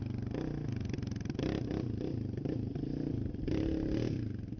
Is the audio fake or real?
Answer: real